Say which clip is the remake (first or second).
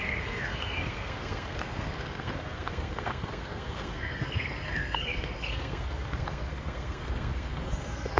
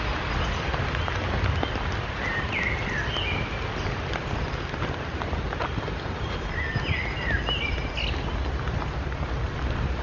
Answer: first